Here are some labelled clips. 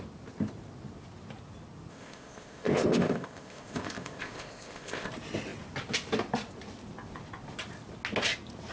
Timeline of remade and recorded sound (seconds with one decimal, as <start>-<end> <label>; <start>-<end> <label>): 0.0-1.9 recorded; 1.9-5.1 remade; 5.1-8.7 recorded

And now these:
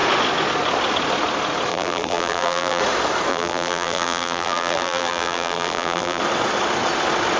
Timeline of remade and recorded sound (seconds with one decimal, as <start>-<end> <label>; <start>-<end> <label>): 0.0-1.7 recorded; 1.7-2.8 remade; 2.8-3.3 recorded; 3.3-6.2 remade; 6.2-7.4 recorded

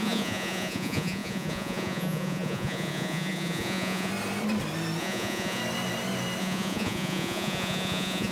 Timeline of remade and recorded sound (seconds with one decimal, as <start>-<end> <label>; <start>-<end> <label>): 0.0-4.1 remade; 4.1-5.0 recorded; 5.0-5.6 remade; 5.6-6.4 recorded; 6.4-8.3 remade